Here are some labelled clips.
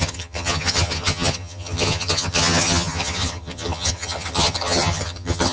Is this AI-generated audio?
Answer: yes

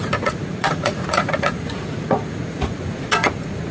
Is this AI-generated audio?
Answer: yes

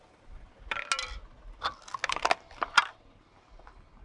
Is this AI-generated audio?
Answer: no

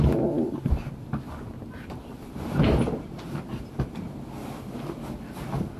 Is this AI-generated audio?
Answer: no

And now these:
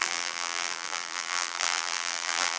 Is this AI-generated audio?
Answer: yes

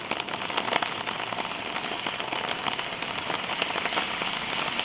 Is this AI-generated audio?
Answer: no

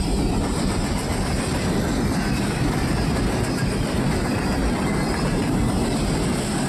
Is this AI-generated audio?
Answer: no